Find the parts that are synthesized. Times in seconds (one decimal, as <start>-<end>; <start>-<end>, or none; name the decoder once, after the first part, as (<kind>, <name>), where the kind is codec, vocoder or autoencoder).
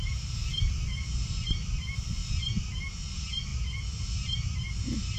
0.0-2.2 (vocoder, BigVGAN v2); 3.1-5.2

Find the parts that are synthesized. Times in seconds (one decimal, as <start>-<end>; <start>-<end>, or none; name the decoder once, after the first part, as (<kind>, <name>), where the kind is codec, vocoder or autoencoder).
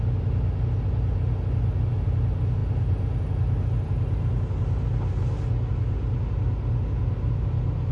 none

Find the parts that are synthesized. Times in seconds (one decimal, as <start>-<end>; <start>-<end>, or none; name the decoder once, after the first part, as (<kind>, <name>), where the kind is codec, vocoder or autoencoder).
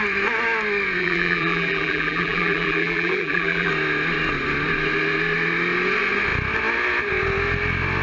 1.0-3.7 (vocoder, BigVGAN v2)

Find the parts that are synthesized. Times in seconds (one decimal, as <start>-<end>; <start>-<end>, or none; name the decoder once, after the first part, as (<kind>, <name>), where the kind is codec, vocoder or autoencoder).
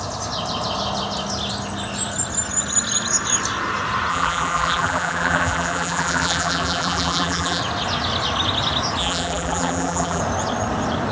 4.1-7.6 (vocoder, BigVGAN v2); 9.0-10.2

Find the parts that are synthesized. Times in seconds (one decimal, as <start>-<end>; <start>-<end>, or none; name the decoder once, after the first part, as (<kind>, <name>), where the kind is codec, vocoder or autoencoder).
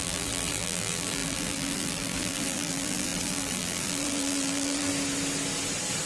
0.0-4.9 (vocoder, BigVGAN v2)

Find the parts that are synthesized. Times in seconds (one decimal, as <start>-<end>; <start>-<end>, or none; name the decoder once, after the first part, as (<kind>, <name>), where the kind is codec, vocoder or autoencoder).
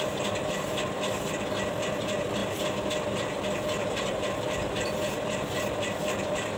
2.4-6.6 (vocoder, BigVGAN v2)